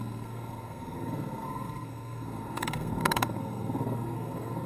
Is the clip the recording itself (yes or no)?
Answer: no